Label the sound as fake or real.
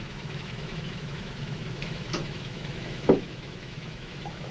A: fake